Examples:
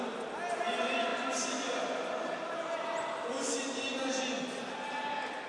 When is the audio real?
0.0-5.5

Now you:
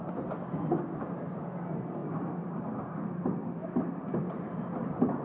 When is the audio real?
0.0-5.2

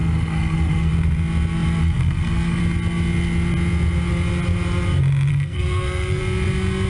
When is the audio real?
0.9-1.8; 2.6-5.3; 6.2-6.9

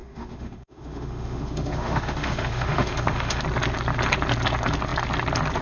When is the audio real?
3.4-5.6

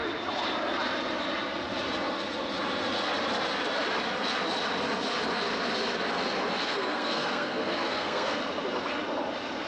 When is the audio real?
0.0-6.6; 8.4-9.7

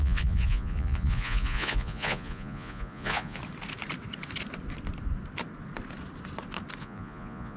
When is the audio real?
3.4-6.8

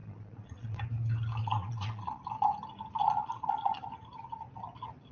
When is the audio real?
0.8-1.4; 2.2-3.0; 3.8-5.1

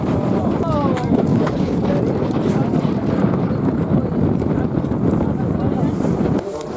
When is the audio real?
0.0-1.3; 1.9-6.8